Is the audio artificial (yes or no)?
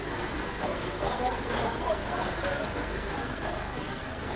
yes